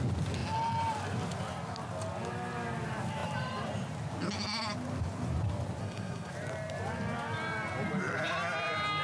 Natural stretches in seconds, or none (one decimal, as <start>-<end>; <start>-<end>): 0.0-5.8; 6.3-9.0